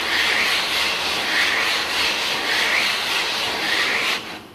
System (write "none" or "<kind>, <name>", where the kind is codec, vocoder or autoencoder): none